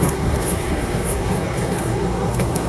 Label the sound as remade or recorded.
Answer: remade